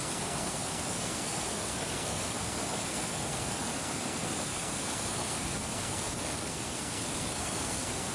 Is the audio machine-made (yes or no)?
yes